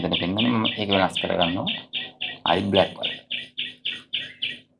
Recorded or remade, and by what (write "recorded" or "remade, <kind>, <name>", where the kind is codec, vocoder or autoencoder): remade, vocoder, BigVGAN v2